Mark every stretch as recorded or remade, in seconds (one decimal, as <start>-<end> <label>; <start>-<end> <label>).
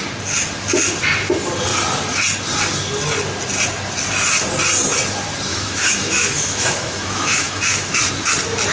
0.0-5.5 recorded; 5.5-8.0 remade; 8.0-8.7 recorded